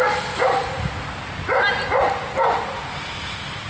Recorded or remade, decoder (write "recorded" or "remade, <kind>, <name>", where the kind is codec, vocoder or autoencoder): recorded